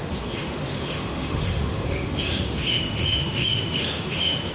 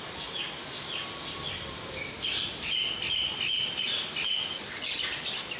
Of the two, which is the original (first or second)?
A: second